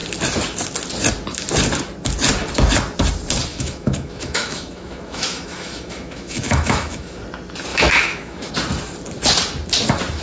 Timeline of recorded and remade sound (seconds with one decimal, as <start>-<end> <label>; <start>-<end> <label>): 0.0-3.5 recorded; 3.5-7.2 remade; 7.2-7.7 recorded; 7.7-8.5 remade; 8.5-10.2 recorded